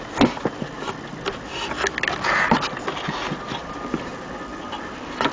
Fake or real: real